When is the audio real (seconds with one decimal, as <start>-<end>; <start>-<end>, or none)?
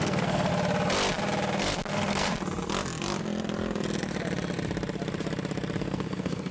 0.5-1.9; 2.3-5.8